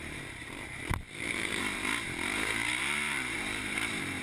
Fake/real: fake